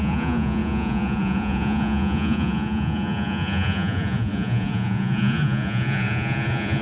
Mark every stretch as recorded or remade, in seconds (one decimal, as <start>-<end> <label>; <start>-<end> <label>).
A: 0.0-6.8 remade